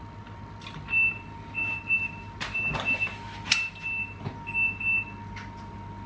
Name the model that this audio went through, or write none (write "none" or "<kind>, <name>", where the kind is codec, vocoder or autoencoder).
none